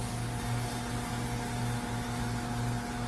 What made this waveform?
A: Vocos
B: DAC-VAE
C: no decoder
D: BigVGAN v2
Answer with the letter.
C